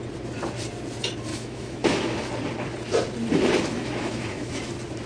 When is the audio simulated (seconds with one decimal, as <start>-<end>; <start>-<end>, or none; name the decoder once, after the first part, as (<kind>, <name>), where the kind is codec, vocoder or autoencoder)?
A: 1.3-2.3 (autoencoder, DAC-VAE); 3.7-4.6